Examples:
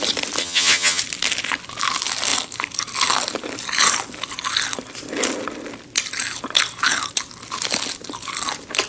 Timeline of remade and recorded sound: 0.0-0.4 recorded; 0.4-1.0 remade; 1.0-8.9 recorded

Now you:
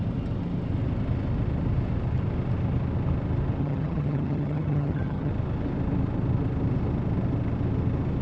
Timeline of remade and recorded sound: 0.0-3.6 recorded; 3.6-5.3 remade; 5.3-8.2 recorded

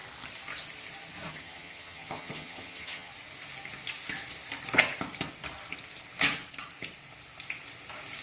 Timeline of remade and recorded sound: 0.0-1.3 recorded; 1.3-3.1 remade; 3.1-8.2 recorded